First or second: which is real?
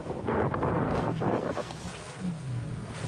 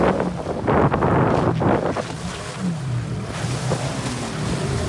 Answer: second